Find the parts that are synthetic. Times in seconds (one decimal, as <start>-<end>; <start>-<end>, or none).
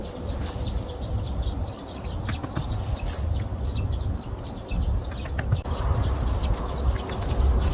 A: none